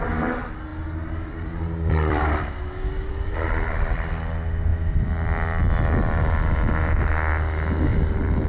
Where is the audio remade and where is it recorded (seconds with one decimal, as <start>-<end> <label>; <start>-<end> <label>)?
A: 0.0-0.7 recorded; 0.7-4.1 remade; 4.1-4.7 recorded; 4.7-5.6 remade; 5.6-7.9 recorded; 7.9-8.5 remade

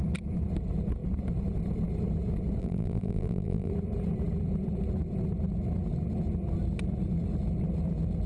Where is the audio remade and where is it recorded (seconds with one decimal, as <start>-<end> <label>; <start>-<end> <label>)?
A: 0.0-2.6 recorded; 2.6-3.7 remade; 3.7-8.3 recorded

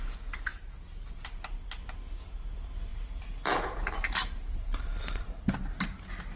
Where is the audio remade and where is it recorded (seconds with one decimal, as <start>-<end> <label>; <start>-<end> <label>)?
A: 0.0-0.5 recorded; 0.5-1.2 remade; 1.2-2.9 recorded; 2.9-6.0 remade; 6.0-6.4 recorded

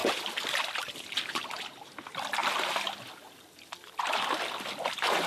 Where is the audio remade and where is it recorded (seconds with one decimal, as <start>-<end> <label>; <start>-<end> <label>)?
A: 0.0-5.3 recorded